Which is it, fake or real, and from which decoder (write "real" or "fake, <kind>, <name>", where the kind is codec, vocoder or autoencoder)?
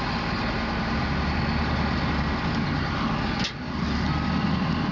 real